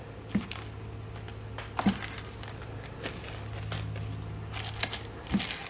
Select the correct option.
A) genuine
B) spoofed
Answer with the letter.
A